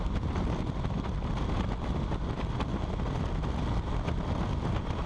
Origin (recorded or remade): recorded